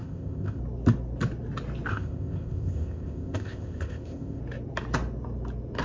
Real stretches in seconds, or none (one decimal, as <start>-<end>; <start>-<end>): 0.6-1.9; 4.4-5.8